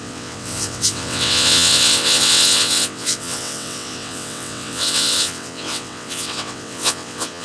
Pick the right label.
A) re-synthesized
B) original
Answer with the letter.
A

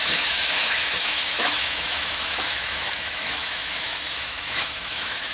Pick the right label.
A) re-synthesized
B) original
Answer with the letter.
A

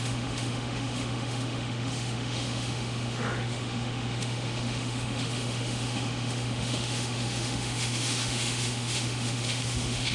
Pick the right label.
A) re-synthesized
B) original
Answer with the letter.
A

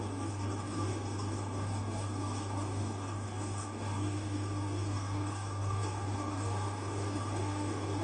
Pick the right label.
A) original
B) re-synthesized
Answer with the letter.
B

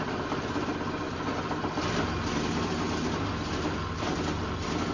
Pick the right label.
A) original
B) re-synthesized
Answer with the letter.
A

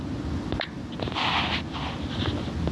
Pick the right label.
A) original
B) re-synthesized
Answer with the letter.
A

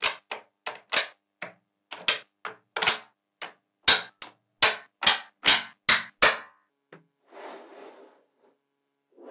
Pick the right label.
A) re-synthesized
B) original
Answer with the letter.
B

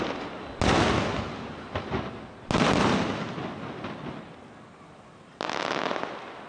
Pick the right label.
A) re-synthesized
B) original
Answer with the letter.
B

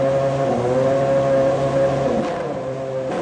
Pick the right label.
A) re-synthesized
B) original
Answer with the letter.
B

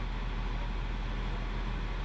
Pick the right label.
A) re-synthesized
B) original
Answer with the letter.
B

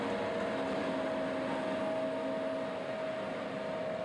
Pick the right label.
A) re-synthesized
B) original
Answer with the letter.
B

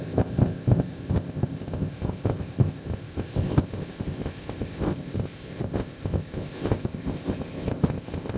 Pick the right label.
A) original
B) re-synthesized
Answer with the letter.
B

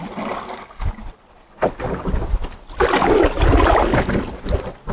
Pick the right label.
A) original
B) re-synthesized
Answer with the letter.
A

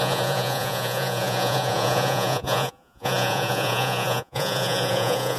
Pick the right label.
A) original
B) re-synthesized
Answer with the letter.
B